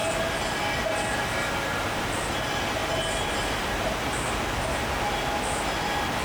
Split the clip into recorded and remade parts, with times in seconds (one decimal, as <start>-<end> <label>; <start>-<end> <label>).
0.0-6.2 recorded